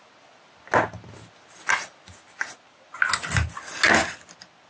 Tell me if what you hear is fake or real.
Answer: real